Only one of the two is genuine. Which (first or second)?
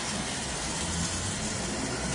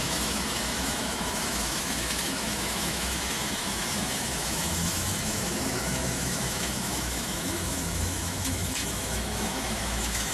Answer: first